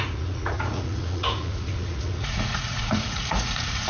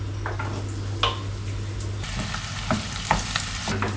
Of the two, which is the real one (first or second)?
second